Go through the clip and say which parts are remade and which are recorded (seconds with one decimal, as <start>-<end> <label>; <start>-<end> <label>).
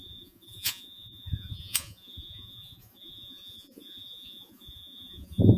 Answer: 0.0-5.6 remade